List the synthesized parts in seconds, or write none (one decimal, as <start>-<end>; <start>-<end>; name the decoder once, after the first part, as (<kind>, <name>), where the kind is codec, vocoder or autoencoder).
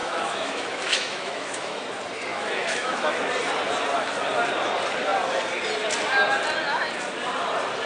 0.0-1.8 (autoencoder, DAC-VAE); 2.3-3.3